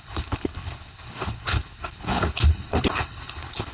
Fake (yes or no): yes